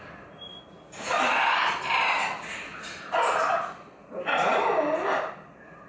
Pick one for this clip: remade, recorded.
recorded